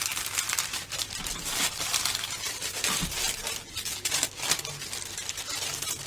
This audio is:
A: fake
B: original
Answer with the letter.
A